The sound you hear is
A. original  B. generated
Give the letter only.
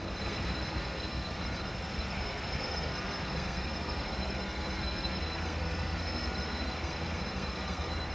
B